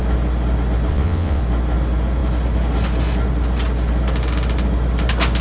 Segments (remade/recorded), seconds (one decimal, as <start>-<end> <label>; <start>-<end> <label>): 0.0-0.9 recorded; 0.9-1.4 remade; 1.4-5.4 recorded